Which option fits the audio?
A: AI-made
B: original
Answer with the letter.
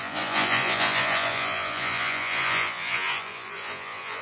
A